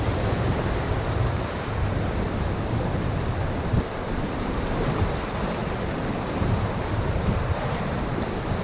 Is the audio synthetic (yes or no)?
yes